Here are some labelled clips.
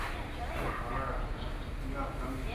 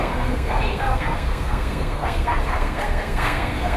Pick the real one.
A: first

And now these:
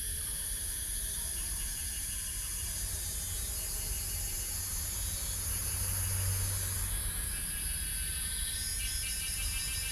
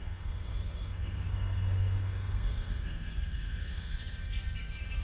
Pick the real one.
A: first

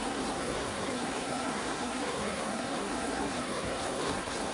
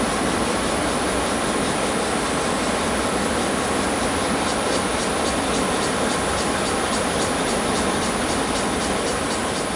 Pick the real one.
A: second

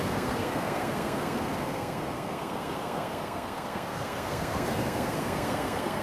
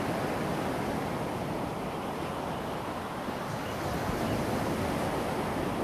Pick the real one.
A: second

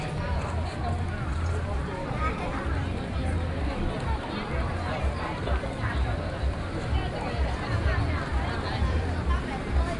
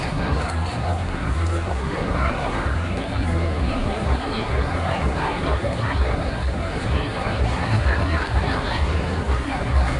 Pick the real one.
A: first